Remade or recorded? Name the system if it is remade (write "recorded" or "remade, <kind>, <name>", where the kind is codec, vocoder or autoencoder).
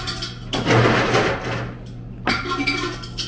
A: recorded